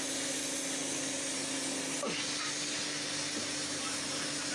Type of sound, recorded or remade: recorded